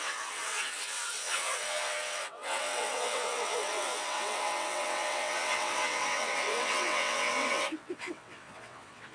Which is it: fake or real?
fake